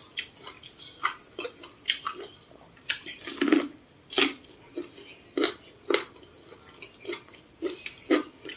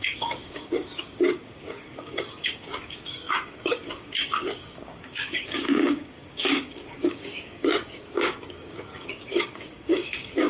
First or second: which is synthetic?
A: second